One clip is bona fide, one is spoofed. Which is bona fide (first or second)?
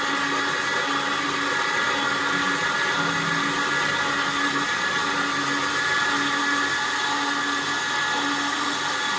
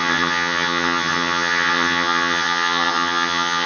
first